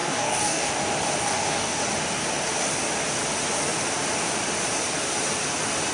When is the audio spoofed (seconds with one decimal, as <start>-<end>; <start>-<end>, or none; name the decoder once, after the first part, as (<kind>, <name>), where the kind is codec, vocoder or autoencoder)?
0.0-0.7 (codec, DAC); 1.2-1.8